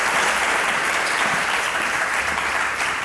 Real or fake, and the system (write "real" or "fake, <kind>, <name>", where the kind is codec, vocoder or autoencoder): fake, vocoder, BigVGAN v2